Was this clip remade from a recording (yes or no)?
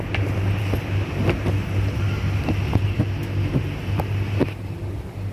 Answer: no